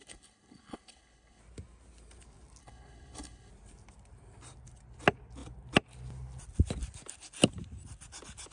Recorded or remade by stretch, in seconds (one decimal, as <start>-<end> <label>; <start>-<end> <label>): 0.0-1.4 remade; 1.4-2.6 recorded; 2.6-3.5 remade; 3.5-8.5 recorded